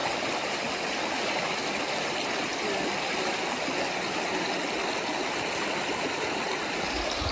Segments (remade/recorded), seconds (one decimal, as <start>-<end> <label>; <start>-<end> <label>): 0.0-7.3 recorded